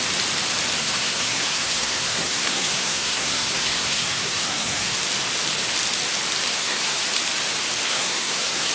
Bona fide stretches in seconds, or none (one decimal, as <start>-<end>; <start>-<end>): 0.0-0.8; 5.0-6.5; 7.0-7.9